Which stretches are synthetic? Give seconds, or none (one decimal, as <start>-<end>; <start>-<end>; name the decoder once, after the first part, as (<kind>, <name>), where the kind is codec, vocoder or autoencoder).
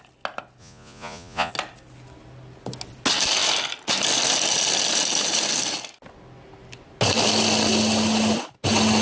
0.6-1.5 (vocoder, Vocos)